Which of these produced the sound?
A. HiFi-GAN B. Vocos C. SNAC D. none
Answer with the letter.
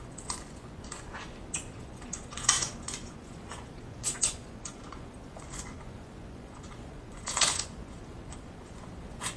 B